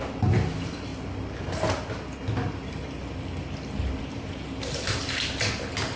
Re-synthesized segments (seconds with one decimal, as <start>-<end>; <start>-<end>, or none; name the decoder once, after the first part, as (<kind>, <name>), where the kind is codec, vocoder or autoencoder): 0.0-0.9 (vocoder, BigVGAN v2); 4.0-5.0